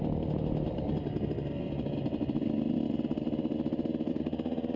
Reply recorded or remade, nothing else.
recorded